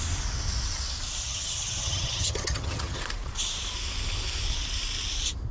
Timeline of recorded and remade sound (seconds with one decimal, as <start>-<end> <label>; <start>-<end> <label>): 0.0-1.2 recorded; 1.2-3.0 remade; 3.0-5.5 recorded